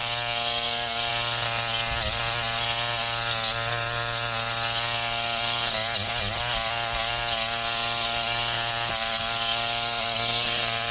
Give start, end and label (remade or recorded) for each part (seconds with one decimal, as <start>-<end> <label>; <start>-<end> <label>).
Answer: 0.0-10.9 recorded